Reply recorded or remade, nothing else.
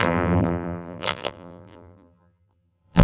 remade